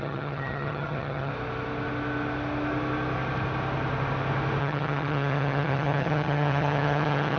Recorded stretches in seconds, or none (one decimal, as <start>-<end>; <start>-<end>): 1.3-4.6